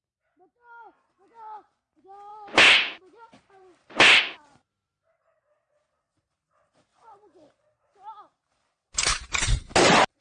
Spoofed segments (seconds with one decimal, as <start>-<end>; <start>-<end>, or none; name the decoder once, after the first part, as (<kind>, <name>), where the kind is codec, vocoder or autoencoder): none